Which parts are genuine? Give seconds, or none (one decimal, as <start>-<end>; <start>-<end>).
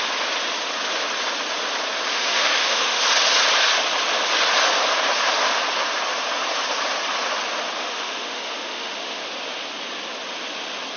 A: 0.0-2.1; 3.0-7.8; 9.2-11.0